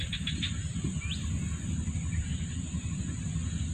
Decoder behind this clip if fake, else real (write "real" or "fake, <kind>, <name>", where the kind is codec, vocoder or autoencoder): real